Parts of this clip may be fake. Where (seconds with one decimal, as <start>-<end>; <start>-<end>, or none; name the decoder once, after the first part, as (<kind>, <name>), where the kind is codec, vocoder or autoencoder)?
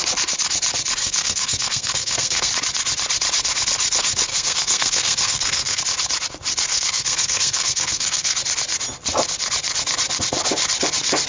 1.0-2.5 (codec, SNAC); 4.3-5.8; 6.7-8.4